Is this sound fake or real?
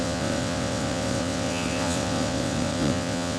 fake